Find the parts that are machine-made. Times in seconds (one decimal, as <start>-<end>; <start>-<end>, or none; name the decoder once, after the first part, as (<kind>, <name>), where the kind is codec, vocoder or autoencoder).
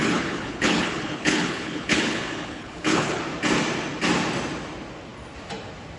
0.0-3.2 (codec, HILCodec)